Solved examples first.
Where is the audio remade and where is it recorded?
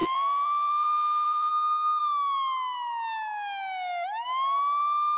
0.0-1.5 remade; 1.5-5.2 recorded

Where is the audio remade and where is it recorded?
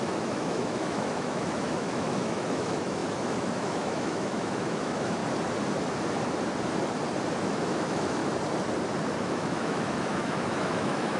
0.0-5.2 remade; 5.2-7.4 recorded; 7.4-8.2 remade; 8.2-9.2 recorded; 9.2-11.2 remade